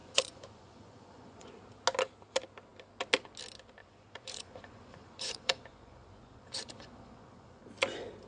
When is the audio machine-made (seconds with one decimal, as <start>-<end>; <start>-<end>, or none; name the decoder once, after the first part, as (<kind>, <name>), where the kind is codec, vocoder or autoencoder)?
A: 0.0-1.5 (vocoder, Vocos); 3.8-7.6